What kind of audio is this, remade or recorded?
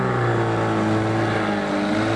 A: recorded